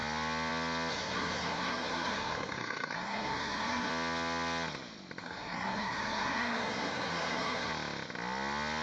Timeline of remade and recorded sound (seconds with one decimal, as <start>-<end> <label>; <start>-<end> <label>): 0.0-0.9 recorded; 0.9-3.9 remade; 3.9-5.2 recorded; 5.2-7.7 remade; 7.7-8.8 recorded